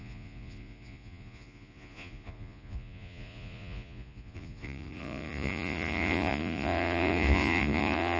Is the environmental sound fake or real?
fake